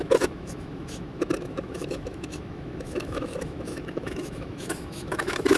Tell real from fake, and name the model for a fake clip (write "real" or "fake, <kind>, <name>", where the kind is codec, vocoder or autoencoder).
fake, autoencoder, DAC-VAE